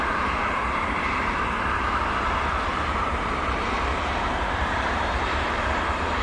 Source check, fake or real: fake